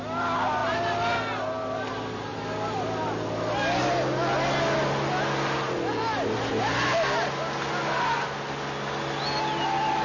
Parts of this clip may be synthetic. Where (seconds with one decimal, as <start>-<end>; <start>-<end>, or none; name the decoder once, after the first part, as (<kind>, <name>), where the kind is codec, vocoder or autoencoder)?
none